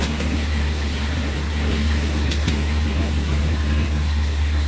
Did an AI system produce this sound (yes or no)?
yes